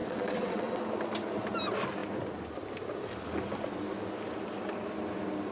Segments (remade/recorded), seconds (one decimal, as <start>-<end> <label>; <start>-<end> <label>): 0.0-0.8 remade; 0.8-5.5 recorded